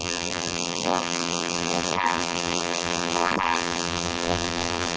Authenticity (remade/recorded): remade